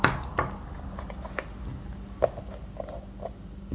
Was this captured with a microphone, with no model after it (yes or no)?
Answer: yes